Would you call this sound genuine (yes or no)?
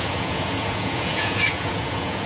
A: no